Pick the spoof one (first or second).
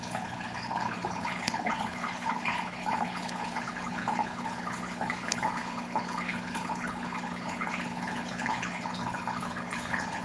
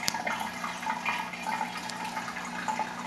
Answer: first